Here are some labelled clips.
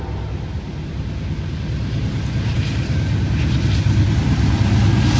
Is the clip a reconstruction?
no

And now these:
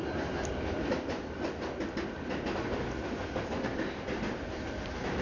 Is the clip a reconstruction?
no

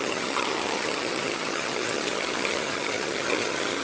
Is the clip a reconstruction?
yes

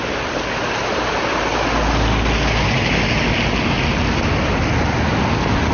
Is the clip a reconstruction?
no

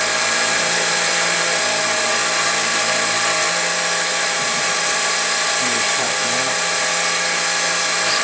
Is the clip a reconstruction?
no